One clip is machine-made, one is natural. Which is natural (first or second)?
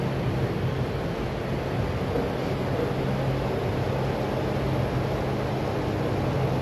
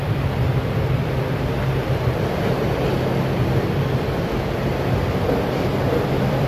first